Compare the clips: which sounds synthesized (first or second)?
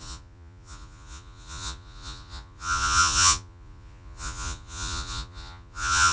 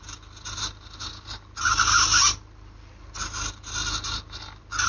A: first